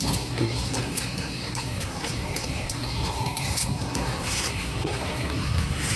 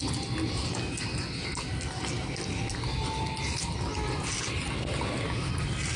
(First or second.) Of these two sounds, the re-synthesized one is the first